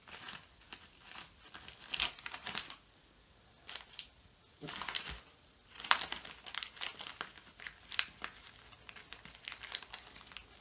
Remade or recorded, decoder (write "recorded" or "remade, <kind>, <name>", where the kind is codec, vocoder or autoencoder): recorded